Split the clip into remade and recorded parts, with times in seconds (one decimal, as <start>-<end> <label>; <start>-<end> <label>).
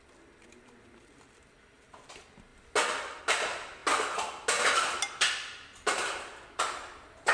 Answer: 0.0-7.3 recorded